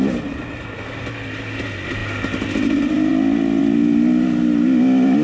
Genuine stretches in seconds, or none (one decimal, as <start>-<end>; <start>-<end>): 0.0-5.2